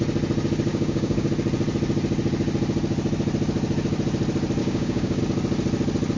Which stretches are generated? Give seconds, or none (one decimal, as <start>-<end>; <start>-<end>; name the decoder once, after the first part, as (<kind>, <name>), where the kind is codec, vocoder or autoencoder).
0.7-1.3 (codec, DAC); 4.6-5.2